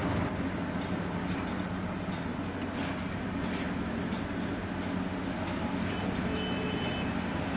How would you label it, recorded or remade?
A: recorded